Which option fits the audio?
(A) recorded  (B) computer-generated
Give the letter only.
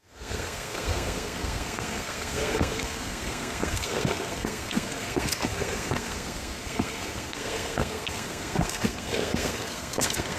B